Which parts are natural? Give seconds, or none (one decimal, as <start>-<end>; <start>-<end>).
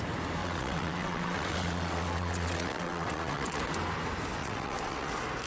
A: 0.0-0.4; 3.6-4.4; 5.1-5.5